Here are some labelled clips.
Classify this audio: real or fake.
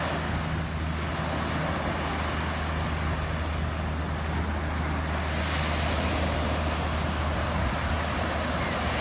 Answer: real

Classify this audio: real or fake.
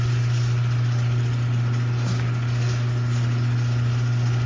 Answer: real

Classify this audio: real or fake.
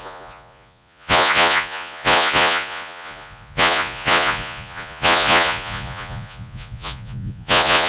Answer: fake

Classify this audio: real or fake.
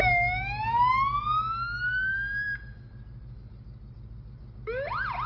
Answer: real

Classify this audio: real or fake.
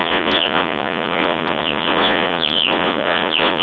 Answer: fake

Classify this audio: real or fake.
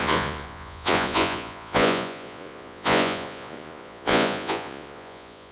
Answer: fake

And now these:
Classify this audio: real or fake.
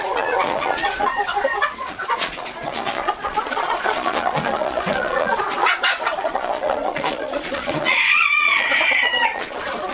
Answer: fake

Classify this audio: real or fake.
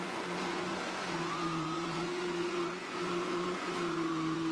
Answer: fake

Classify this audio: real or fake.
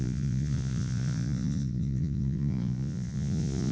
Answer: fake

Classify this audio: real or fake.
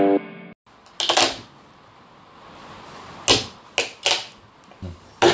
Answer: real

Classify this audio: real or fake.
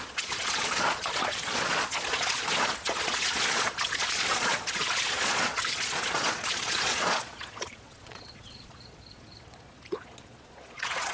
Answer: fake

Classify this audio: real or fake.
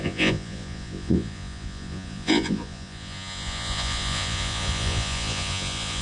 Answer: fake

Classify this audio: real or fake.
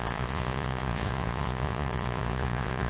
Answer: fake